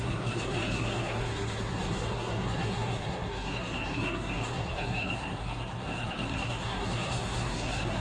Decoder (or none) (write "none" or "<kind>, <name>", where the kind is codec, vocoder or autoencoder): codec, SNAC